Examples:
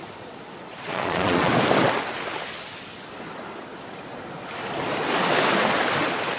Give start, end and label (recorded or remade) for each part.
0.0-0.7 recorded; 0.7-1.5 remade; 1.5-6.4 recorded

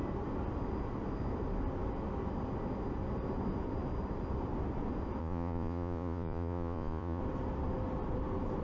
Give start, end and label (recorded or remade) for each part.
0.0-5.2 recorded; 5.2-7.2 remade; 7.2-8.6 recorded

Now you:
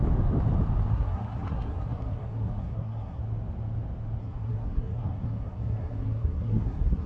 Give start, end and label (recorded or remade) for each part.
0.0-0.9 recorded; 0.9-3.2 remade; 3.2-4.2 recorded; 4.2-7.1 remade

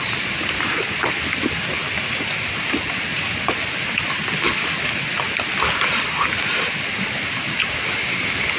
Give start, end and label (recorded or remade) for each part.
0.0-8.6 recorded